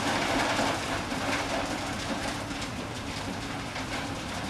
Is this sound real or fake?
fake